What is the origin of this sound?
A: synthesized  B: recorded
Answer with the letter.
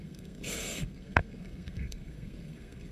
A